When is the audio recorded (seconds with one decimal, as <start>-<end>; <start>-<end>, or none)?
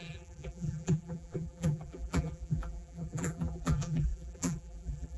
none